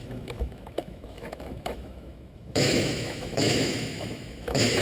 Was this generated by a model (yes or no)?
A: yes